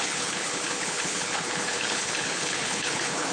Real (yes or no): no